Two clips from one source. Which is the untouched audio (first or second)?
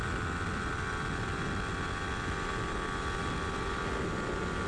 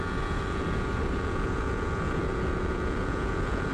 first